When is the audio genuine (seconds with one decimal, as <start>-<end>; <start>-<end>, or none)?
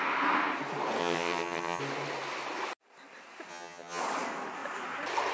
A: 0.0-1.0; 1.8-3.5; 4.0-5.3